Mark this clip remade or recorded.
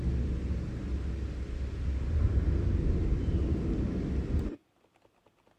recorded